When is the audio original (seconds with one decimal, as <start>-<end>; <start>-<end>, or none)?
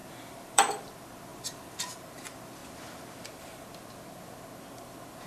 0.9-1.3; 1.8-5.3